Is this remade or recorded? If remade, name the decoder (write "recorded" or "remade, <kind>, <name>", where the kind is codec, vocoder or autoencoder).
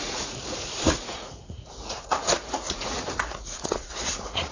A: remade, vocoder, Vocos